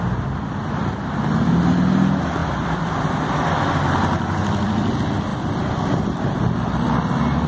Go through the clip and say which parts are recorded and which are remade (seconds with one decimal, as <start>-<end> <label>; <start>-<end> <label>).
0.0-2.4 recorded; 2.4-3.6 remade; 3.6-5.3 recorded; 5.3-6.5 remade; 6.5-7.5 recorded